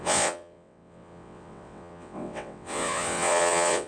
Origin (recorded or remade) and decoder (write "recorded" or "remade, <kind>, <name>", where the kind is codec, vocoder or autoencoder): remade, vocoder, WaveNeXt